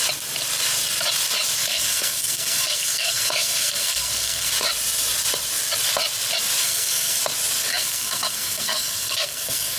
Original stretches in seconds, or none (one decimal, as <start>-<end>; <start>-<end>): 0.0-1.6; 4.5-6.6; 7.2-7.7